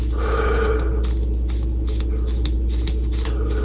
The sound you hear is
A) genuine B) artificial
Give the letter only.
A